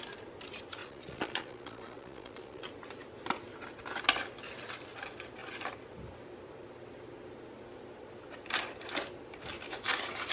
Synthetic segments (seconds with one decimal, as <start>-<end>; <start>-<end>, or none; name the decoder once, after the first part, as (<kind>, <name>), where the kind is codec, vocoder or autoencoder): 0.8-2.7 (vocoder, Vocos)